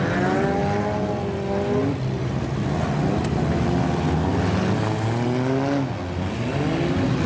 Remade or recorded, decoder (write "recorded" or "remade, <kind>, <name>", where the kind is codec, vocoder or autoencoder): recorded